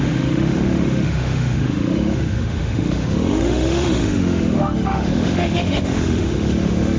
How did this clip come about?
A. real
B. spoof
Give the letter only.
B